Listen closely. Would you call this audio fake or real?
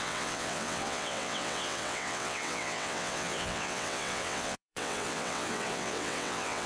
fake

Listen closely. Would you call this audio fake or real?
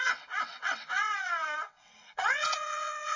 fake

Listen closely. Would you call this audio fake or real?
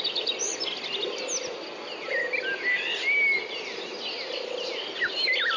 real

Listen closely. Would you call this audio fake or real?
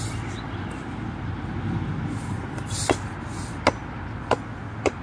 real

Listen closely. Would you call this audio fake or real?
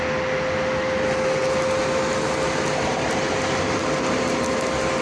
real